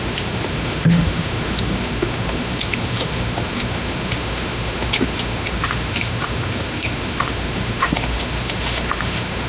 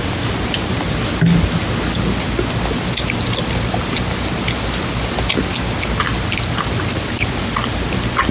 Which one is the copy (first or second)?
first